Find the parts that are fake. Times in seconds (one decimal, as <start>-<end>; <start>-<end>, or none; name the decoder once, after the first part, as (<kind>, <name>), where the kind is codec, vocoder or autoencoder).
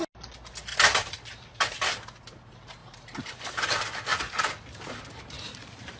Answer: none